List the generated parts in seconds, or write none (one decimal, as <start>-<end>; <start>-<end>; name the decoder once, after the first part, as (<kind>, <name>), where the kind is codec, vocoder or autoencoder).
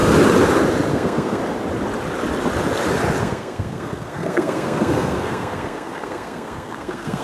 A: 0.9-1.4 (codec, SNAC); 3.2-7.2